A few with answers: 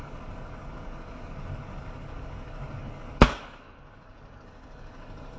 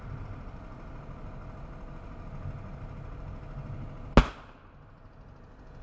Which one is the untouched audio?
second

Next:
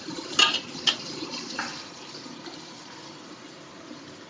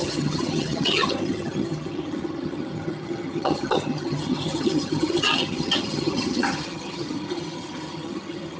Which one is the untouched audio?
first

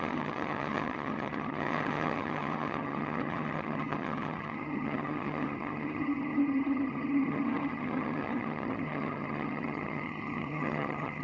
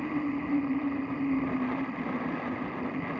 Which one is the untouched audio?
second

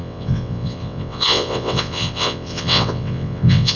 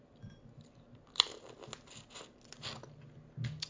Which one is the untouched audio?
second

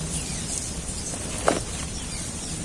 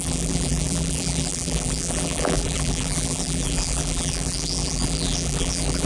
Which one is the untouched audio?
first